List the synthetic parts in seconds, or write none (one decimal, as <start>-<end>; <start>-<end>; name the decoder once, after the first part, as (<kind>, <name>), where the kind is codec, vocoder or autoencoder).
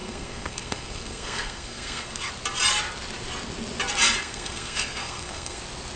0.0-2.3 (codec, SNAC); 4.2-5.6